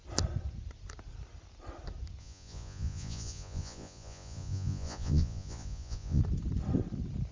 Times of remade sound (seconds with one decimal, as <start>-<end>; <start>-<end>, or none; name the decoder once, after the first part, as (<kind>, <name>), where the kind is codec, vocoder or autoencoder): 2.2-6.2 (vocoder, Vocos)